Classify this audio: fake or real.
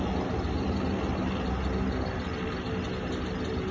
real